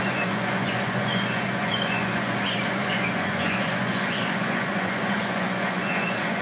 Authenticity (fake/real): fake